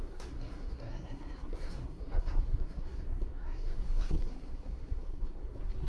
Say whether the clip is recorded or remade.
remade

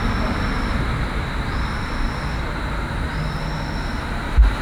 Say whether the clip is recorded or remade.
remade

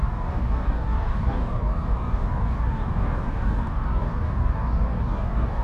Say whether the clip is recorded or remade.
remade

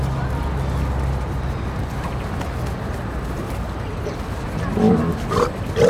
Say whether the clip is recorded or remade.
recorded